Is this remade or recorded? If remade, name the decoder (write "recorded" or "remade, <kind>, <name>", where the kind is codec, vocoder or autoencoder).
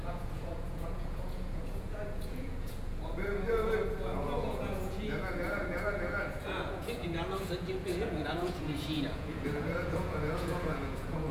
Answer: remade, vocoder, Vocos